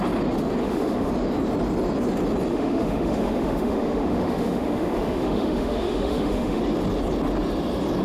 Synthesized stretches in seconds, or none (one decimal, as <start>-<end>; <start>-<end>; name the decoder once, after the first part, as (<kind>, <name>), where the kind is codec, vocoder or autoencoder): 0.6-1.1 (autoencoder, DAC-VAE); 2.5-6.6